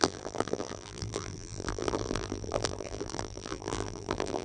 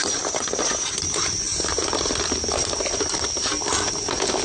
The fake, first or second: first